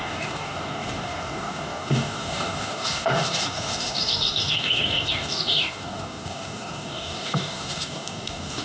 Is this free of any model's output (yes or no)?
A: no